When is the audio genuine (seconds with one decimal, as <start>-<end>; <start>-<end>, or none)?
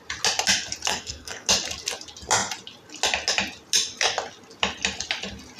0.0-0.9; 1.5-5.6